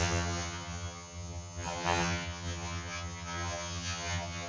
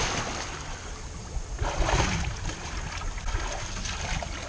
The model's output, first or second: first